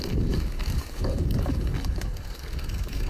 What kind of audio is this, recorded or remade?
remade